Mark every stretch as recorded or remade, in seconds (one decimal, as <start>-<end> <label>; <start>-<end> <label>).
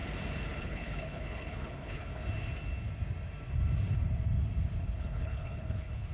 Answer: 0.0-0.6 recorded; 0.6-2.2 remade; 2.2-4.8 recorded; 4.8-6.1 remade